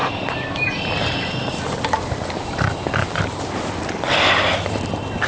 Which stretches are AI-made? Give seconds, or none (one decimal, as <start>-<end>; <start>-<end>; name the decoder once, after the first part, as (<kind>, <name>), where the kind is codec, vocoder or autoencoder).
none